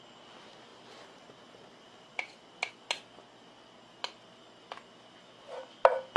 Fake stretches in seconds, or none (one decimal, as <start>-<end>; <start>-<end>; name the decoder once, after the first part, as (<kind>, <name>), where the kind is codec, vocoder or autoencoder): 0.7-2.7 (vocoder, BigVGAN v2)